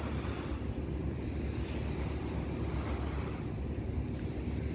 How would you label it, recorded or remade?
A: recorded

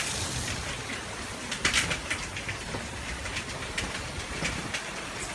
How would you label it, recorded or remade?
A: recorded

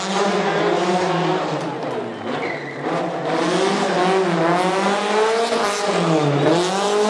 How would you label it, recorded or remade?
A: recorded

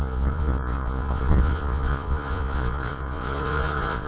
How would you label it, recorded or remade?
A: remade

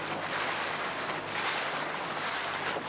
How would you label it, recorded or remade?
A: recorded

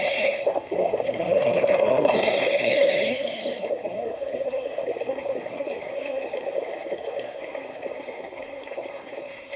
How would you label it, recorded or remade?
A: remade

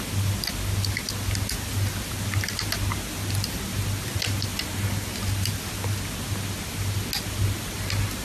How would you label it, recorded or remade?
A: recorded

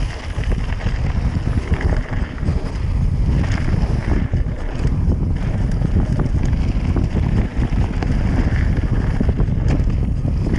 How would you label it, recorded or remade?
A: recorded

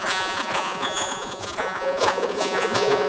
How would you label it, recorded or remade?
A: remade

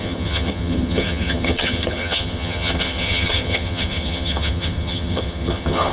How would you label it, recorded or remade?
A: remade